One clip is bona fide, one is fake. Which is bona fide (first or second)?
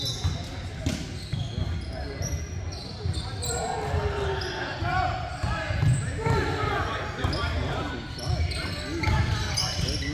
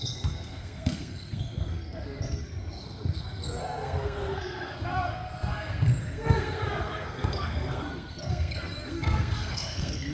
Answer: first